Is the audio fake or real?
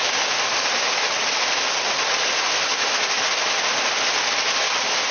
real